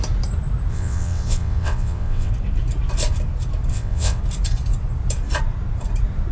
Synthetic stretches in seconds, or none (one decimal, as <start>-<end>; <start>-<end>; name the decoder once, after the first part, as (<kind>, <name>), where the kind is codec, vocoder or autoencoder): 0.7-2.3 (vocoder, WaveNeXt); 3.7-4.2